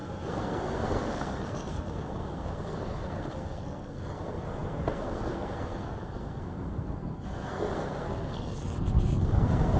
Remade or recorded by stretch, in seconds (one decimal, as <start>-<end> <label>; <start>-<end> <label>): 0.0-9.8 remade